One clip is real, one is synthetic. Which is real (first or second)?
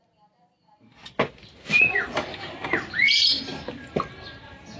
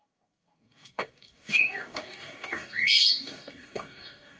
first